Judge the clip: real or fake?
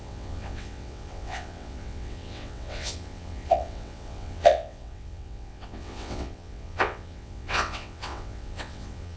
fake